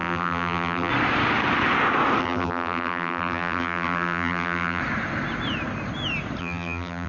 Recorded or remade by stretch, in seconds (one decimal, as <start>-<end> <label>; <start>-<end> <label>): 0.0-0.9 remade; 0.9-2.2 recorded; 2.2-4.8 remade; 4.8-6.4 recorded; 6.4-7.1 remade